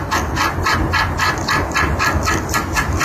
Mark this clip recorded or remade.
recorded